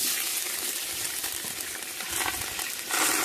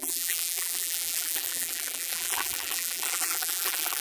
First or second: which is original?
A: first